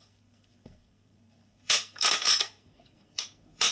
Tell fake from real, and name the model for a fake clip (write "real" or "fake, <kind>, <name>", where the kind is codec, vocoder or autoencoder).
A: fake, codec, SNAC